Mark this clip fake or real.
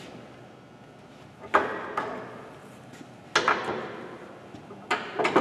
real